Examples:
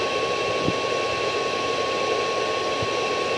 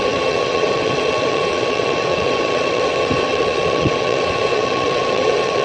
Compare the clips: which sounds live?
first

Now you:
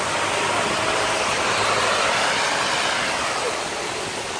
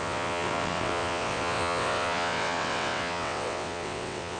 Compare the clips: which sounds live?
first